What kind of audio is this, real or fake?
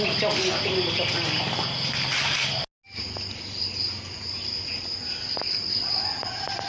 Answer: real